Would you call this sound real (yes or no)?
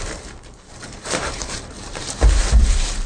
no